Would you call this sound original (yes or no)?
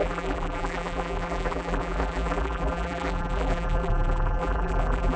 no